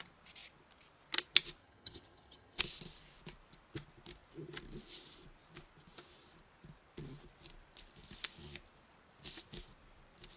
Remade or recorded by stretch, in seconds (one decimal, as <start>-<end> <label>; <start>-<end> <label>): 0.0-1.6 recorded; 1.6-2.6 remade; 2.6-10.4 recorded